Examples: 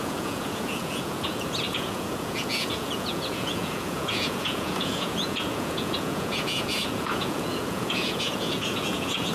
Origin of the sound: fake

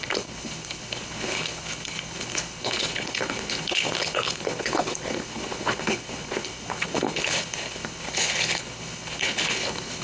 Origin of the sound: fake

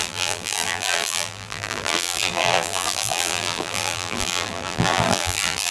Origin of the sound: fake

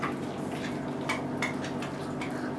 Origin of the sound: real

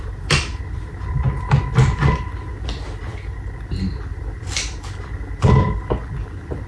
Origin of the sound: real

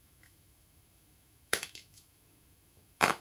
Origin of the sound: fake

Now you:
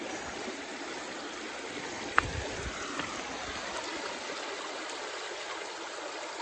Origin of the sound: real